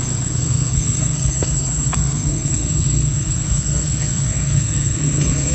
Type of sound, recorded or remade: remade